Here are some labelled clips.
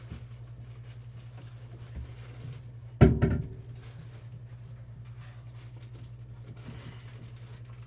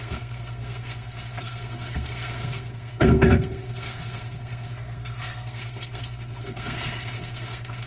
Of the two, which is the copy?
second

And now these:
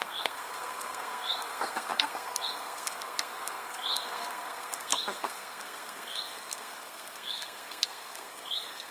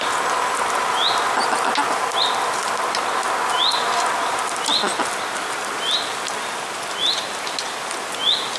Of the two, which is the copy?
first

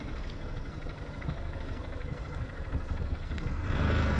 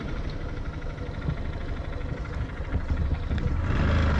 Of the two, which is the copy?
first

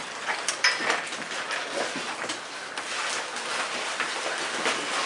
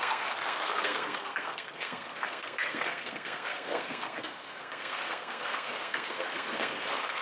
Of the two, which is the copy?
second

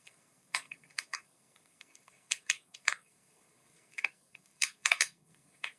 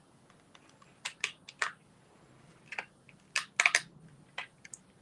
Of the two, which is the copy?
first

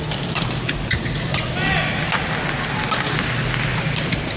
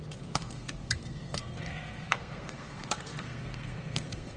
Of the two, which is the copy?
second